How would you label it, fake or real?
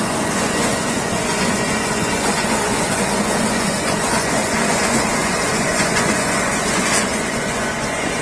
fake